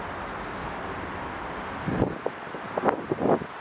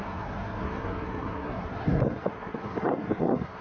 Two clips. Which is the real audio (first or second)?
first